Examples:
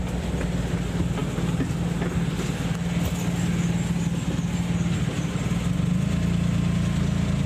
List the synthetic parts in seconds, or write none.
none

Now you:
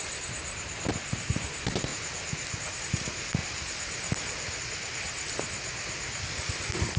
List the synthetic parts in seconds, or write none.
1.9-2.8 (vocoder, BigVGAN v2)